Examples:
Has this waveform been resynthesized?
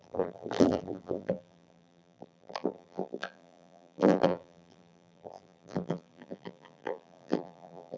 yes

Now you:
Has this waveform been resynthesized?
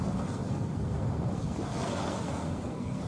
yes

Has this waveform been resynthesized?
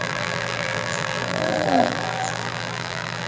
yes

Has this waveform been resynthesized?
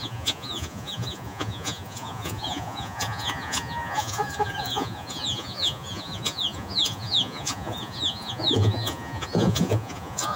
yes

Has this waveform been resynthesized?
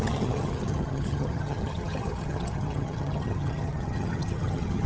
yes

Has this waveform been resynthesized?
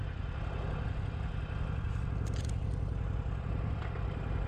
no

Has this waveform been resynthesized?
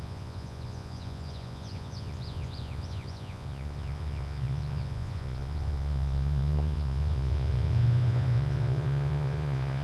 yes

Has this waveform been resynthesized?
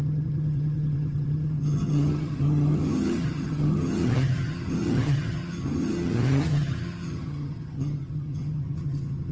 yes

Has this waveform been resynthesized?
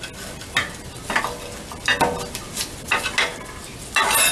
no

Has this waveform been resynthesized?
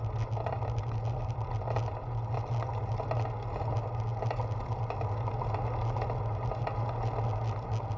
no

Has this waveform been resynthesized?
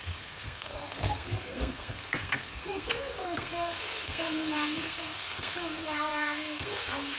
yes